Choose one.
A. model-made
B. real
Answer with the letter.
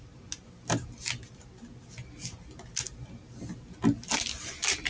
B